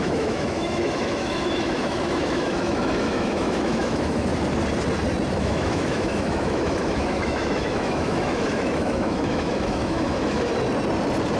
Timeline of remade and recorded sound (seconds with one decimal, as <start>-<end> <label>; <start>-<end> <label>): 0.0-4.3 remade; 4.3-5.4 recorded; 5.4-10.5 remade; 10.5-11.4 recorded